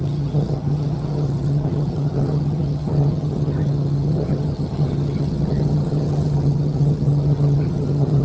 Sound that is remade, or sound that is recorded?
remade